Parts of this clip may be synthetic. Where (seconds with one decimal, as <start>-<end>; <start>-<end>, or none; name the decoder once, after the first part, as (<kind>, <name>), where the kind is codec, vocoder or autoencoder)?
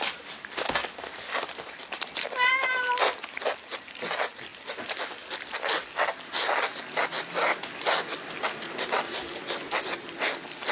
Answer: none